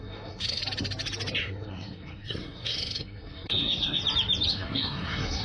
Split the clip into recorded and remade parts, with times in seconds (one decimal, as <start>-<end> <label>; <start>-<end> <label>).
0.0-0.6 remade; 0.6-1.4 recorded; 1.4-4.0 remade; 4.0-4.5 recorded; 4.5-5.4 remade